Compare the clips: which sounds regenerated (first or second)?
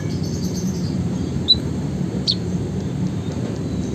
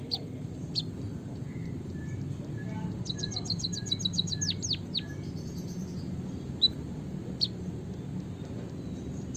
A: first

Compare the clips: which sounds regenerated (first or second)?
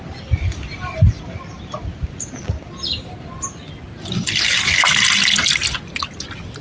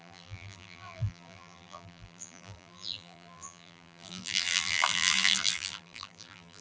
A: second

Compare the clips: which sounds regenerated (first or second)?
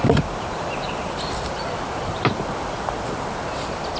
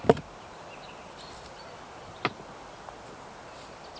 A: first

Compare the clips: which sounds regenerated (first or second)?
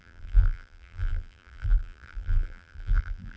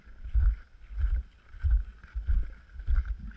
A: first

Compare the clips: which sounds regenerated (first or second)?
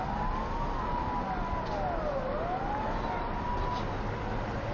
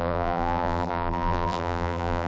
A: second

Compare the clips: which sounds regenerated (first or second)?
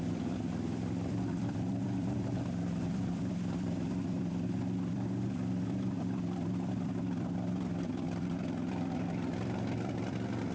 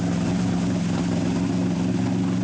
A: first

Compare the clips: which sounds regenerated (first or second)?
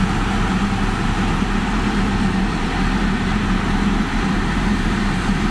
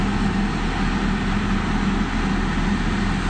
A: first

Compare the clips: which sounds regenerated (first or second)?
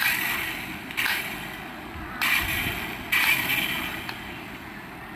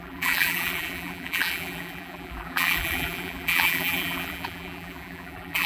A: second